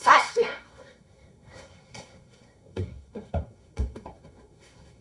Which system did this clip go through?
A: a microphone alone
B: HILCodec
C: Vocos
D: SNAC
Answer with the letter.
D